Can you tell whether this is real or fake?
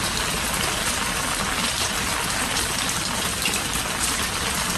real